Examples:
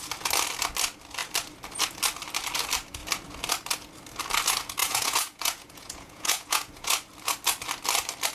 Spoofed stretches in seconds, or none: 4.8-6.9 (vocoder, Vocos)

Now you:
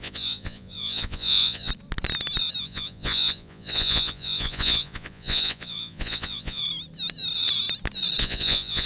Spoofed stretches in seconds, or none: 0.0-1.7 (vocoder, Vocos); 2.6-6.6; 8.2-8.9

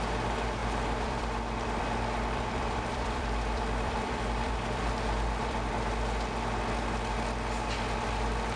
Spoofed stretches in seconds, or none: 0.6-5.7 (vocoder, BigVGAN v2)

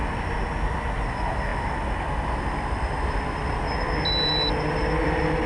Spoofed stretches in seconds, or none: none